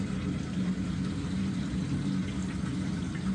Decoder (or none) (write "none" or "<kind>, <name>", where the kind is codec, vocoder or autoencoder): none